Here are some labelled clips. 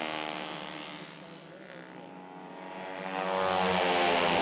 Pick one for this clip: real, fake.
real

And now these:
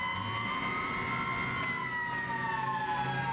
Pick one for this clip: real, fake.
real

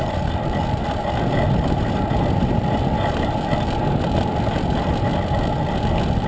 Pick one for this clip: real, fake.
real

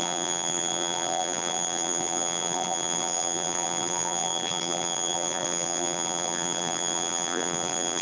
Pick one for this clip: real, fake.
fake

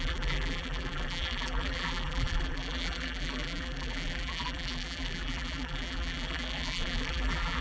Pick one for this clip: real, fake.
fake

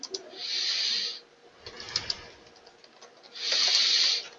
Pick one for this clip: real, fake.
real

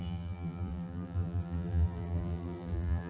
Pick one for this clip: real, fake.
fake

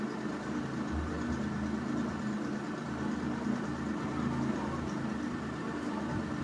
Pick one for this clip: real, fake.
real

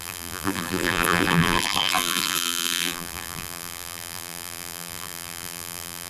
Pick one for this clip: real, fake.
fake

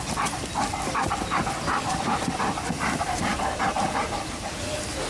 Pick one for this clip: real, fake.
real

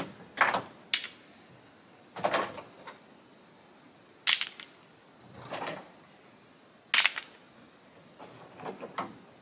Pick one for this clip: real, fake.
real